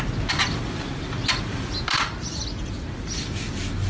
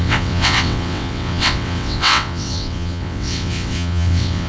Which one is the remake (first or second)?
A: second